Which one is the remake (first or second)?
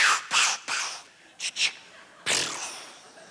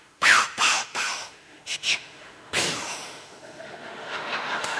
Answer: second